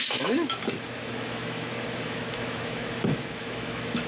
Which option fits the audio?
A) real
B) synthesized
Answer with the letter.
B